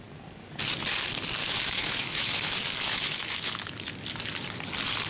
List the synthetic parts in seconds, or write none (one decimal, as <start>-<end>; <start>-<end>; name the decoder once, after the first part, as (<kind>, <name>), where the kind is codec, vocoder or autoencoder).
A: 1.4-3.9 (autoencoder, DAC-VAE)